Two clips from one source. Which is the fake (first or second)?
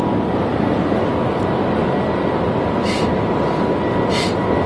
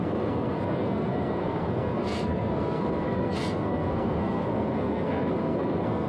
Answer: second